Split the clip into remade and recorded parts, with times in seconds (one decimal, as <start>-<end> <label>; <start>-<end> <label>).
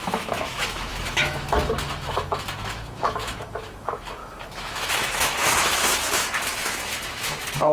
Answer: 0.0-7.7 remade